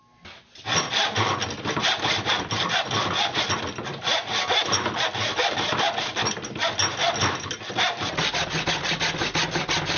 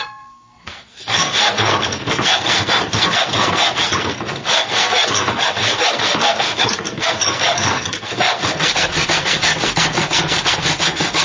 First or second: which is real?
first